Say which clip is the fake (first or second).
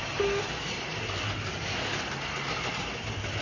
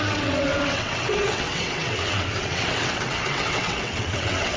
second